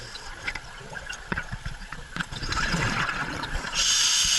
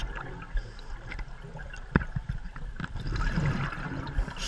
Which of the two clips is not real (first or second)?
first